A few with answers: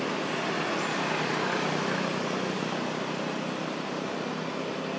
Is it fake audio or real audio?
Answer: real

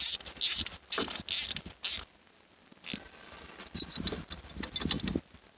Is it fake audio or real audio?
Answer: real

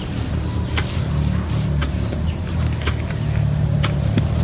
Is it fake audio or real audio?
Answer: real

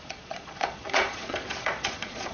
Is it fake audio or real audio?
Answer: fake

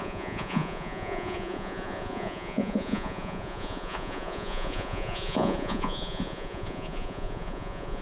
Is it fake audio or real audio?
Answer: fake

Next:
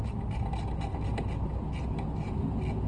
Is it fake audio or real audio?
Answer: real